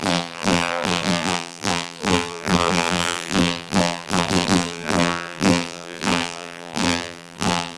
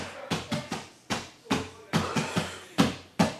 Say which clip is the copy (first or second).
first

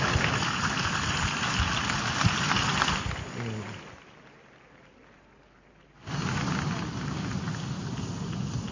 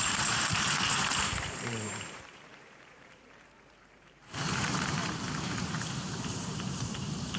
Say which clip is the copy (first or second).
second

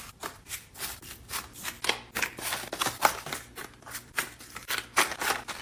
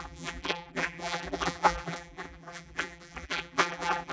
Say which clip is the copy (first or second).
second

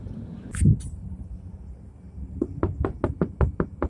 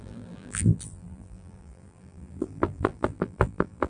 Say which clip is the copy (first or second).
second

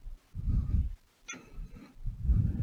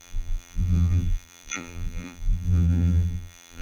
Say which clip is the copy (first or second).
second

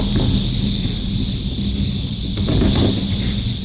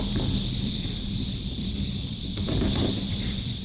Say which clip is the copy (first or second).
second